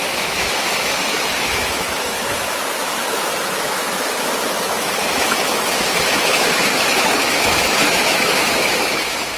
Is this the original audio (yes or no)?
no